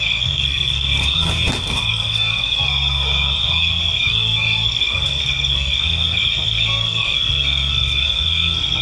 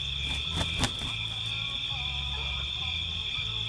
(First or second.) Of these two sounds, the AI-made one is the first